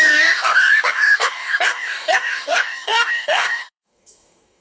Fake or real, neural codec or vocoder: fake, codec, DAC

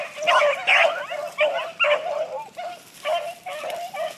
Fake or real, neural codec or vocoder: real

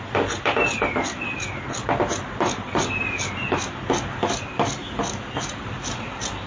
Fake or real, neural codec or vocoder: real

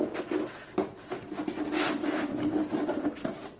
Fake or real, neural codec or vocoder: real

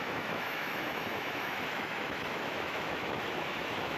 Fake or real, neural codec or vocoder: fake, autoencoder, DAC-VAE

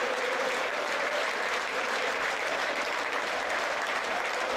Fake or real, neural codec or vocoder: fake, vocoder, BigVGAN v2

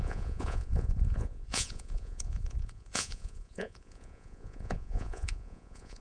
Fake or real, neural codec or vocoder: fake, vocoder, Vocos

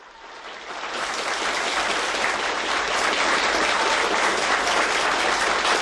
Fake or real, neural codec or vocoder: real